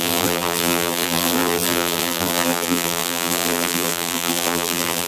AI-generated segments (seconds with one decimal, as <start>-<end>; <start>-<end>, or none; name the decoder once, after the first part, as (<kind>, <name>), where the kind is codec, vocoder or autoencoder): 0.0-5.1 (vocoder, BigVGAN v2)